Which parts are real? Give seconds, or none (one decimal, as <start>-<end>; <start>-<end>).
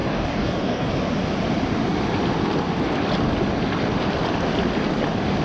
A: 0.9-5.4